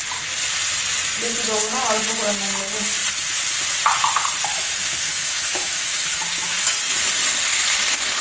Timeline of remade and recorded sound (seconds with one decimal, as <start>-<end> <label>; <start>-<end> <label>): 0.0-4.5 recorded; 4.5-6.6 remade; 6.6-8.2 recorded